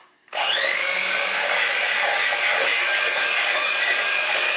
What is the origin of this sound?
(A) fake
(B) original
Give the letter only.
A